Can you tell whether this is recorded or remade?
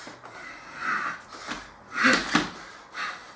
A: recorded